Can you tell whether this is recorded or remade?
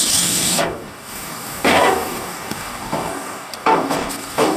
remade